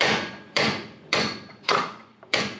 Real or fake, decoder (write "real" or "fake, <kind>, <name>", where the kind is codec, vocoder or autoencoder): fake, vocoder, Vocos